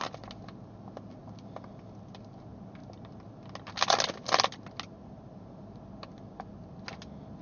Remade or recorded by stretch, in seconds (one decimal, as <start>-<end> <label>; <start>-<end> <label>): 0.0-7.4 recorded